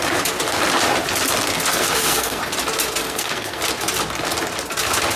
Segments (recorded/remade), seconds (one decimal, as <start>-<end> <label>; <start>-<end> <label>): 0.0-1.7 recorded; 1.7-2.4 remade; 2.4-3.0 recorded; 3.0-3.6 remade; 3.6-5.2 recorded